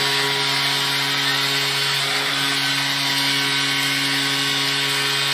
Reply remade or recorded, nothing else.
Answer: recorded